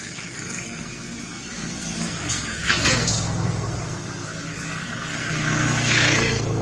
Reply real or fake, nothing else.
fake